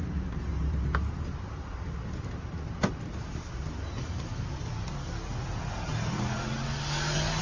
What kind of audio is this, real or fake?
real